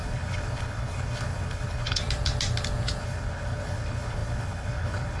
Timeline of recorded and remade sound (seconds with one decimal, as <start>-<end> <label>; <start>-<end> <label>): 0.0-2.0 remade; 2.0-3.0 recorded; 3.0-5.2 remade